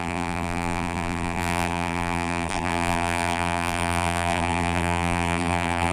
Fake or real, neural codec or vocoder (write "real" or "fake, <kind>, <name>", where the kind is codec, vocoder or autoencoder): fake, vocoder, BigVGAN v2